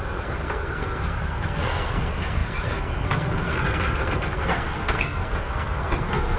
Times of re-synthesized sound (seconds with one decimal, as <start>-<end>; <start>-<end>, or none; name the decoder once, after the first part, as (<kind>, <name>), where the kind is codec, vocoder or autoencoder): 0.0-6.4 (codec, SNAC)